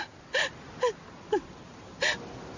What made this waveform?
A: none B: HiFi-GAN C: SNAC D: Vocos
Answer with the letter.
A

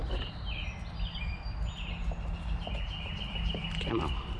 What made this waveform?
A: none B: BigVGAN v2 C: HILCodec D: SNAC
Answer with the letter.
A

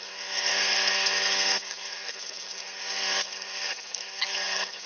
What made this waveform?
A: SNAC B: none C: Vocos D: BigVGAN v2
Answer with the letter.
A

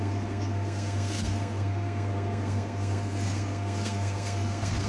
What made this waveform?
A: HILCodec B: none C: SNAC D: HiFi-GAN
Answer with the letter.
C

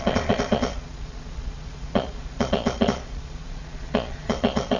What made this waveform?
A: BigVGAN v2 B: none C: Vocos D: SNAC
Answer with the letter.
C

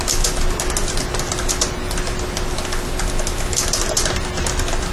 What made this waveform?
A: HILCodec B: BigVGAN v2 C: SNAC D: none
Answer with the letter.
D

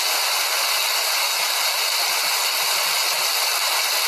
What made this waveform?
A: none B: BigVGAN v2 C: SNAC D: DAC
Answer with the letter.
A